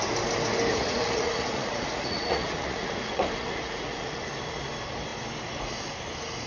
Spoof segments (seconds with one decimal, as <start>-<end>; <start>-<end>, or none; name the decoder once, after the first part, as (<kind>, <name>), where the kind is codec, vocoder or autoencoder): 0.7-4.2 (vocoder, Vocos)